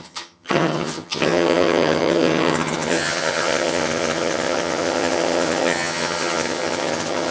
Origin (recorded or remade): remade